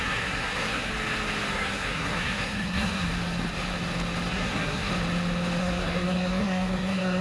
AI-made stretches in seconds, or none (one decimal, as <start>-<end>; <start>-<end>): 0.0-0.9; 1.5-3.1; 4.3-4.9; 5.6-7.2